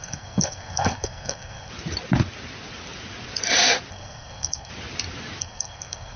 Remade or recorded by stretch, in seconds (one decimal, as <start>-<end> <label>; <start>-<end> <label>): 0.0-1.7 remade; 1.7-3.9 recorded; 3.9-4.7 remade; 4.7-5.4 recorded; 5.4-6.2 remade